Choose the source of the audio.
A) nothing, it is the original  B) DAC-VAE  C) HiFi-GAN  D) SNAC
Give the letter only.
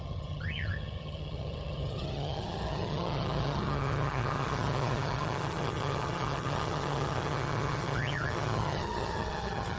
C